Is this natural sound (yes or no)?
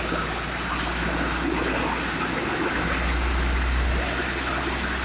yes